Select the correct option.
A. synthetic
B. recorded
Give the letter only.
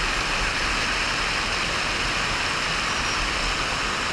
B